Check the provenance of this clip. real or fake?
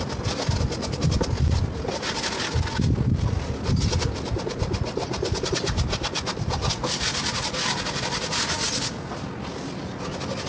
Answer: real